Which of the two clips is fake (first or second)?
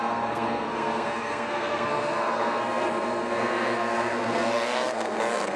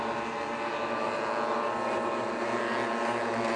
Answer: first